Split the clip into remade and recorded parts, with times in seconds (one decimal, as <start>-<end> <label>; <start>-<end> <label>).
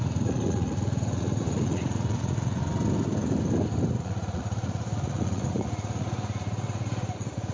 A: 0.0-2.6 remade; 2.6-4.0 recorded; 4.0-7.5 remade